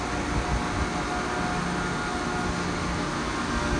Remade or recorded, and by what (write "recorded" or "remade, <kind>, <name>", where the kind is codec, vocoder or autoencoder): recorded